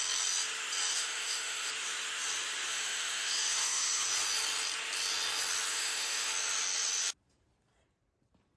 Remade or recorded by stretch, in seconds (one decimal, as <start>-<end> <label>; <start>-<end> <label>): 0.0-0.9 recorded; 0.9-1.7 remade; 1.7-2.7 recorded; 2.7-4.0 remade; 4.0-5.7 recorded; 5.7-6.3 remade; 6.3-8.6 recorded